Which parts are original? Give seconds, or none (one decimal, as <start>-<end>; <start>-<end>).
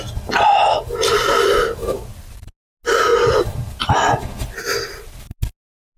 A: 0.0-3.1; 3.8-6.0